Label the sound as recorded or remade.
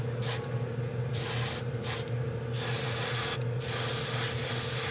recorded